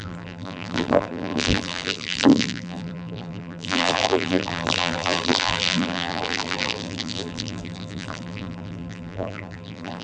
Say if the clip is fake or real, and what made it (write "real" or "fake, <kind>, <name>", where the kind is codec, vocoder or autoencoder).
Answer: fake, vocoder, BigVGAN v2